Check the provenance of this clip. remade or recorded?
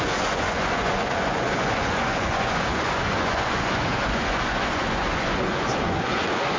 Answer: remade